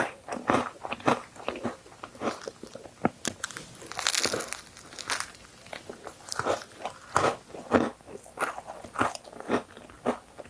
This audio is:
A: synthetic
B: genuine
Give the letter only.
B